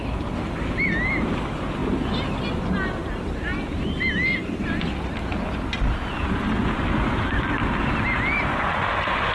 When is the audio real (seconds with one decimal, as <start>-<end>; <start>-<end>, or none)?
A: 0.0-8.5